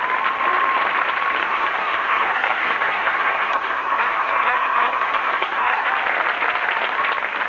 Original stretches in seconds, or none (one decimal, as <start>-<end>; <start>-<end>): 0.0-1.4; 5.9-7.5